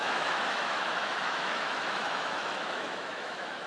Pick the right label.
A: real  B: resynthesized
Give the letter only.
B